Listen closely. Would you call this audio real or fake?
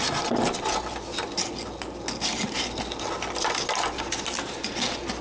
real